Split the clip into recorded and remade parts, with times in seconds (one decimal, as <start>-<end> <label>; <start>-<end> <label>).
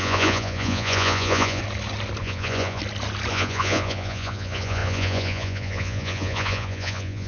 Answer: 0.0-1.6 remade; 1.6-2.2 recorded; 2.2-2.8 remade; 2.8-3.3 recorded; 3.3-7.3 remade